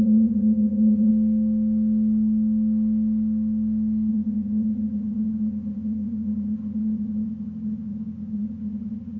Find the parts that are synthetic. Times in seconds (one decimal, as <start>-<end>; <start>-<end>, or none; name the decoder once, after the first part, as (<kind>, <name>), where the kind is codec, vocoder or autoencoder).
0.0-1.1 (vocoder, HiFi-GAN); 4.1-9.2